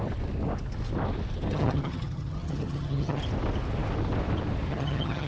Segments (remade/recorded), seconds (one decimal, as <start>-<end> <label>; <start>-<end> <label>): 0.0-1.5 recorded; 1.5-3.2 remade; 3.2-4.7 recorded; 4.7-5.3 remade